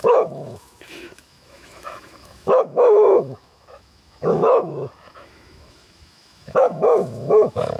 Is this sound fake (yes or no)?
yes